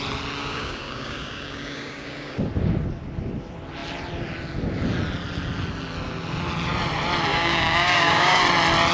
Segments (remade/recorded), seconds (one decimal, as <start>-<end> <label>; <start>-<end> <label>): 0.0-0.4 recorded; 0.4-2.4 remade; 2.4-7.3 recorded; 7.3-8.4 remade; 8.4-8.9 recorded